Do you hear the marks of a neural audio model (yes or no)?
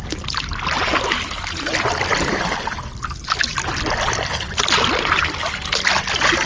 no